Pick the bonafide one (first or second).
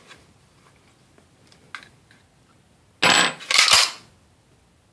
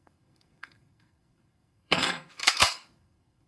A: first